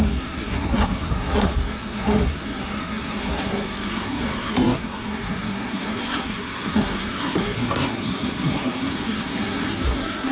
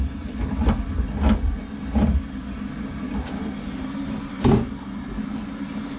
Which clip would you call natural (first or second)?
second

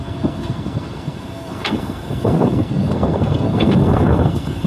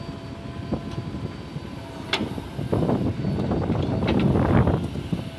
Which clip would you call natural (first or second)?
second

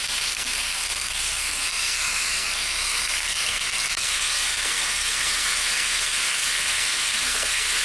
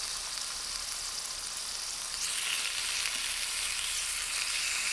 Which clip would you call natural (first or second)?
second